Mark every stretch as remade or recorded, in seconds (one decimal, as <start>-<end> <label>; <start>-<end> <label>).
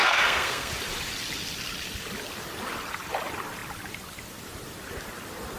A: 0.0-0.7 remade; 0.7-5.6 recorded